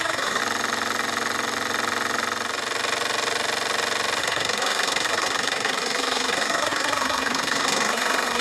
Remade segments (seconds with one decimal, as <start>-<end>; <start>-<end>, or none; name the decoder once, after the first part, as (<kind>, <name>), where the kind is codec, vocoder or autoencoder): 0.0-0.4 (codec, SNAC); 4.2-8.4